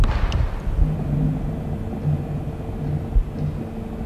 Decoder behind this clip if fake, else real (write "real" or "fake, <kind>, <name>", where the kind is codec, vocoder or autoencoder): real